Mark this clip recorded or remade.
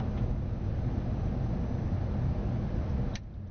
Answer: recorded